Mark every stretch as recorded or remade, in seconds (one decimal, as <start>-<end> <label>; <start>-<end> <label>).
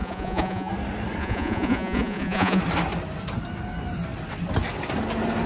0.0-0.7 remade; 0.7-1.2 recorded; 1.2-2.6 remade; 2.6-5.5 recorded